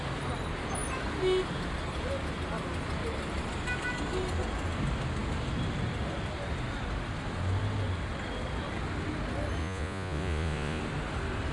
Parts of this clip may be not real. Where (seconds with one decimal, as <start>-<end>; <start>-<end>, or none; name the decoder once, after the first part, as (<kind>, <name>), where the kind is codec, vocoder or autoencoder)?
9.6-10.8 (vocoder, Vocos)